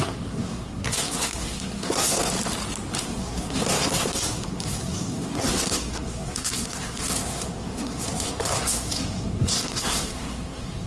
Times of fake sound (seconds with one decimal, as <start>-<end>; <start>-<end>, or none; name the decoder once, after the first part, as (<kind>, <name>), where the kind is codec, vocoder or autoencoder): 0.0-2.3 (codec, SNAC); 3.0-10.9